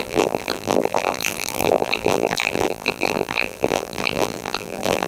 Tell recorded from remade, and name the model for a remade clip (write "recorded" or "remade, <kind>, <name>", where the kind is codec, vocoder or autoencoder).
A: remade, vocoder, BigVGAN v2